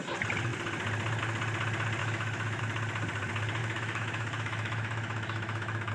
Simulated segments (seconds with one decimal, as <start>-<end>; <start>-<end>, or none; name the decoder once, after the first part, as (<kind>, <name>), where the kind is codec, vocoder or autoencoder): 2.0-2.6 (autoencoder, DAC-VAE); 3.6-5.9